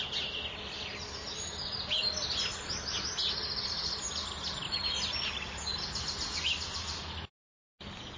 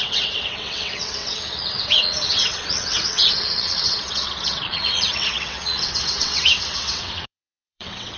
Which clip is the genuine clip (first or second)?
first